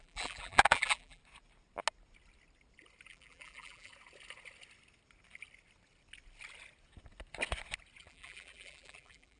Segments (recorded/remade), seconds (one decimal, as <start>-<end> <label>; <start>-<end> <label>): 0.0-1.2 remade; 1.2-3.1 recorded; 3.1-3.9 remade; 3.9-8.0 recorded; 8.0-9.4 remade

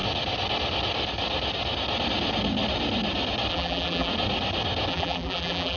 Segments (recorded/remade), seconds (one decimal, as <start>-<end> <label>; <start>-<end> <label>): 0.0-3.5 recorded; 3.5-4.1 remade; 4.1-4.9 recorded; 4.9-5.8 remade

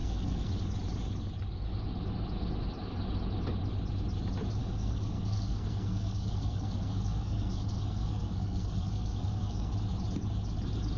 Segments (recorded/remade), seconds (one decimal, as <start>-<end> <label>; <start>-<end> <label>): 0.0-0.5 remade; 0.5-4.6 recorded; 4.6-9.7 remade; 9.7-11.0 recorded

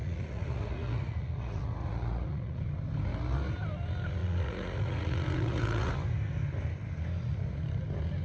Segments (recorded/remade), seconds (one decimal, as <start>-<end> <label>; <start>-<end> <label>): 0.0-2.6 remade; 2.6-4.2 recorded; 4.2-5.9 remade; 5.9-8.2 recorded

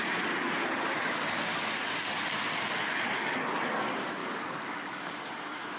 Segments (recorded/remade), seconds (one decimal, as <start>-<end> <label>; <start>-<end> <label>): 0.0-4.2 recorded; 4.2-5.1 remade; 5.1-5.8 recorded